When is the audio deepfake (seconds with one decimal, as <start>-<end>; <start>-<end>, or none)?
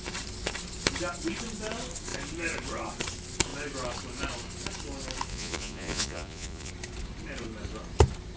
5.3-6.7